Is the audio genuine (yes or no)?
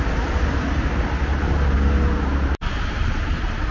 yes